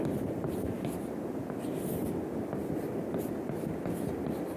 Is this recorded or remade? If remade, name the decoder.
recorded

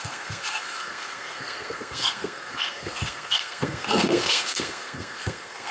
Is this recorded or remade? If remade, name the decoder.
remade, codec, SNAC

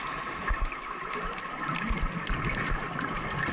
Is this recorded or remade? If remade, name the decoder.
recorded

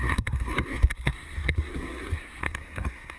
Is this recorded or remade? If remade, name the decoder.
remade, codec, SNAC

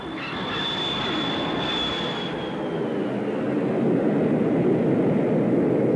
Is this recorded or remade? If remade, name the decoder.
recorded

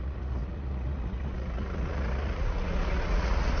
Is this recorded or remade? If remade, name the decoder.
remade, vocoder, Vocos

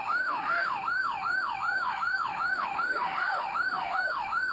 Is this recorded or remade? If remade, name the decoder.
remade, autoencoder, DAC-VAE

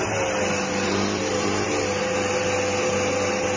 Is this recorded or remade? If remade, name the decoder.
recorded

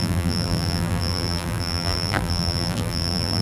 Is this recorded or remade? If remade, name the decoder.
remade, vocoder, BigVGAN v2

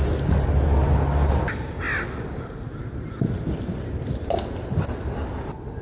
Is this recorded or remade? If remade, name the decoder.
recorded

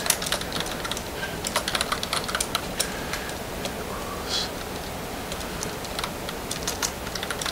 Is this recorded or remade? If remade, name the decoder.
recorded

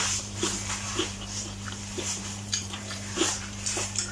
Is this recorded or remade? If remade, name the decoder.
remade, vocoder, BigVGAN v2